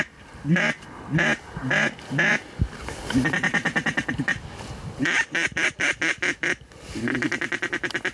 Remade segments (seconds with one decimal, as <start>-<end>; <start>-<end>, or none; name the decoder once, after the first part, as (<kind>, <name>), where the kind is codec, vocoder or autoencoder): 2.3-6.0 (vocoder, BigVGAN v2)